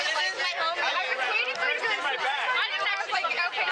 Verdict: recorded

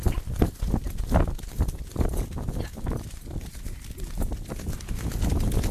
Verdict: recorded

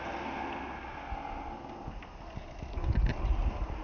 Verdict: recorded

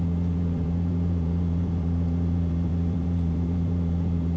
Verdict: remade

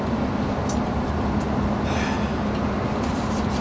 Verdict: recorded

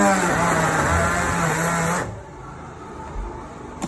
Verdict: recorded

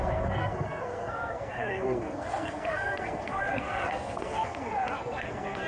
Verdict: remade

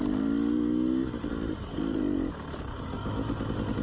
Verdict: recorded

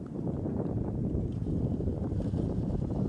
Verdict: remade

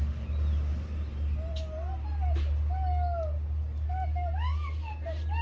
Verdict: recorded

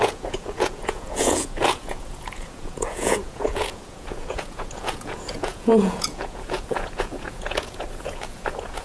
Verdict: remade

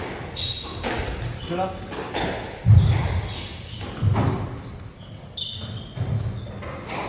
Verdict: recorded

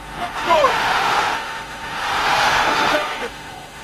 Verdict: remade